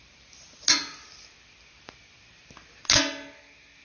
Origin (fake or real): real